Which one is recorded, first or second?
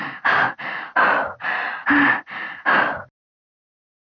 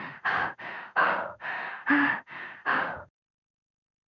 first